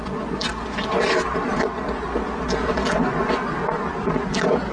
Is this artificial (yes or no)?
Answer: no